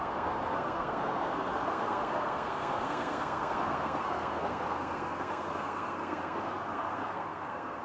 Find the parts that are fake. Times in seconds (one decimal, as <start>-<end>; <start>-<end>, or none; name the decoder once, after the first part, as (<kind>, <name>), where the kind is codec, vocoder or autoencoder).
0.0-7.8 (codec, SNAC)